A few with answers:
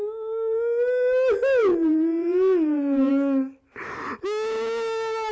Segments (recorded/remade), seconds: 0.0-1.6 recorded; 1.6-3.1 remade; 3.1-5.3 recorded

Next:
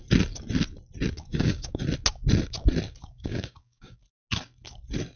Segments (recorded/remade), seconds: 0.0-1.3 recorded; 1.3-1.8 remade; 1.8-3.0 recorded; 3.0-4.0 remade; 4.0-5.2 recorded

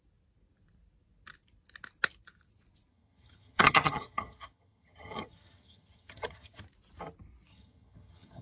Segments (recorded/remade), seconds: 0.0-2.9 recorded; 2.9-6.6 remade; 6.6-7.5 recorded; 7.5-8.4 remade

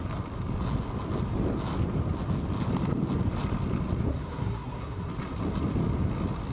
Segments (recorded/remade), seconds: 0.0-4.1 recorded; 4.1-5.1 remade; 5.1-6.5 recorded

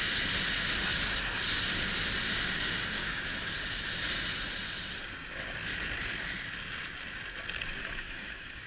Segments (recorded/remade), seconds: 0.0-3.0 recorded; 3.0-3.6 remade; 3.6-7.8 recorded; 7.8-8.7 remade

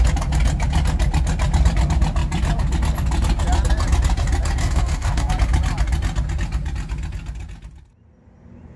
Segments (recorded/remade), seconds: 0.0-4.6 recorded; 4.6-5.3 remade; 5.3-8.8 recorded